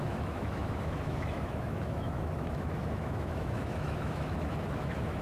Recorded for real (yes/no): no